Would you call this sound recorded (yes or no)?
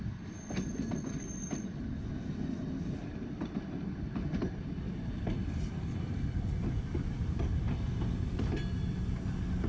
yes